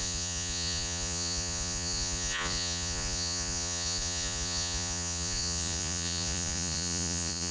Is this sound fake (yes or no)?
yes